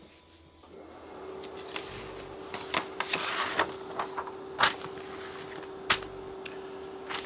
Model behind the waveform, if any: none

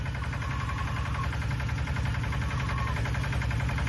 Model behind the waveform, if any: none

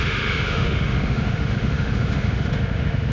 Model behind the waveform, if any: autoencoder, DAC-VAE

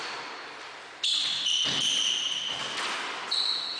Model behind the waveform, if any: none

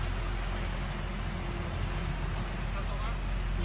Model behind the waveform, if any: none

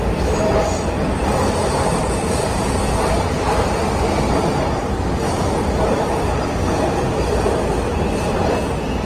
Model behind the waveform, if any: none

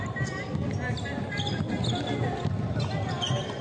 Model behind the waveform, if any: none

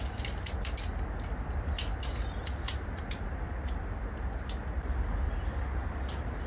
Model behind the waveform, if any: none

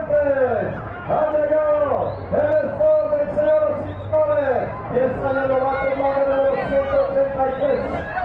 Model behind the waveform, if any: none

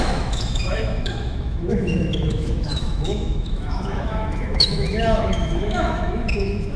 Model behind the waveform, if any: autoencoder, DAC-VAE